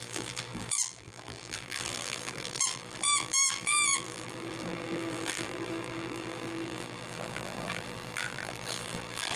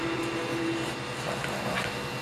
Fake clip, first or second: first